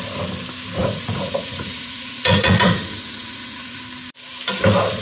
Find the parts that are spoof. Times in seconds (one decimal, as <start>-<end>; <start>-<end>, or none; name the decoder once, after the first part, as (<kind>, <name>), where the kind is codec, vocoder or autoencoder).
0.8-3.8 (vocoder, Vocos)